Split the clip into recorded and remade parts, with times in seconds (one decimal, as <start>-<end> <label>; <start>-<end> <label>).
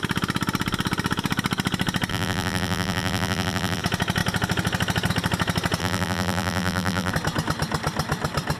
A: 0.0-2.1 recorded; 2.1-3.8 remade; 3.8-5.8 recorded; 5.8-7.1 remade; 7.1-8.6 recorded